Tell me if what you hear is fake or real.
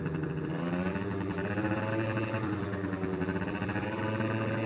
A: fake